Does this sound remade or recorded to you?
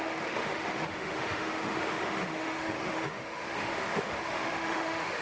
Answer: remade